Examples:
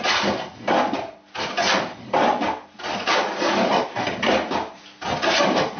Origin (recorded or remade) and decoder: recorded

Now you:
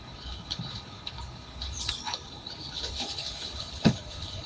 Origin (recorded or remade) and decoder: remade, codec, HILCodec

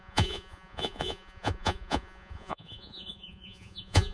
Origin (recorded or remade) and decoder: remade, vocoder, Vocos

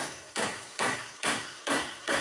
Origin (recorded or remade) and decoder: remade, codec, SNAC